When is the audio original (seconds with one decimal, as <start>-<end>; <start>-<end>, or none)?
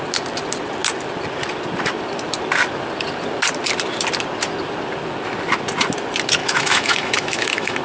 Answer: 0.0-6.4